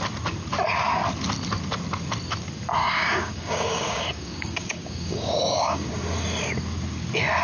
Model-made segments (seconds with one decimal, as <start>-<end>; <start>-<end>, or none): 2.8-5.9